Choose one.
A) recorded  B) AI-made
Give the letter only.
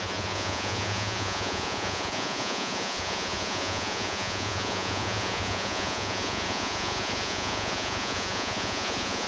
B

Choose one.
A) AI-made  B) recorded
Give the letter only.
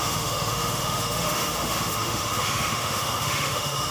A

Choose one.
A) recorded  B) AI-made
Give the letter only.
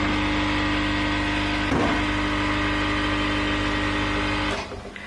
A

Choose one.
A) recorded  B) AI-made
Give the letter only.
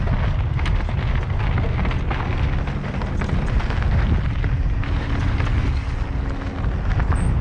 A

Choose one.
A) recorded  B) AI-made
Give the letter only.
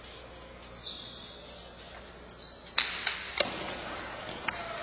A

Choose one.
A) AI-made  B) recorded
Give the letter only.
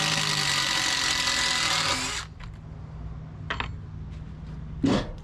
B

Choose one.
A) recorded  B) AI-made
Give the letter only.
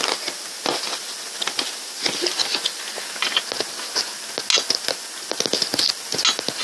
A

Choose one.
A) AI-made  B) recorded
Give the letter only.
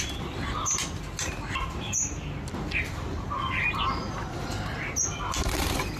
B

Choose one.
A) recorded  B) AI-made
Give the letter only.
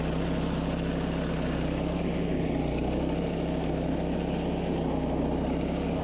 A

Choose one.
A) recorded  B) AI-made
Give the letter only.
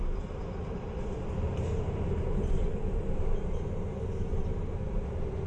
B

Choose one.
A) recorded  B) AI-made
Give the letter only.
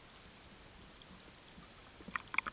A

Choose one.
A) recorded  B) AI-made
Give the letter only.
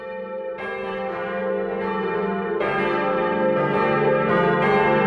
A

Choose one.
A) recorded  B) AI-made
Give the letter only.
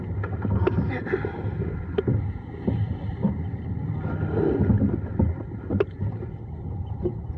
A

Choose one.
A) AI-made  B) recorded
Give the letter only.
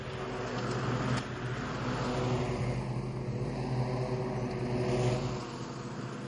B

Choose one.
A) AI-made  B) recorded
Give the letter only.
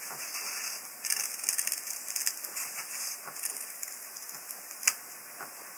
B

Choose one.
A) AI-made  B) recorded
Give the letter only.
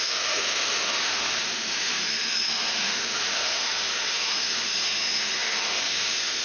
A